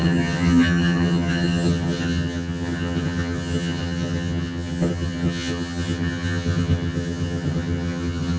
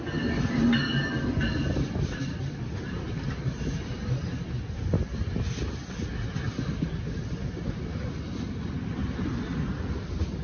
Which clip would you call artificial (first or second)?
first